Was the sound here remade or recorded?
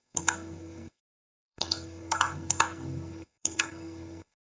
remade